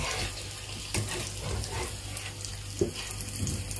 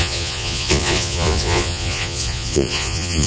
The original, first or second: first